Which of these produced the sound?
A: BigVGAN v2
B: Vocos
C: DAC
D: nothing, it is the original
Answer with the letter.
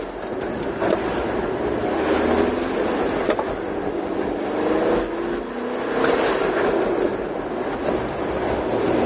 D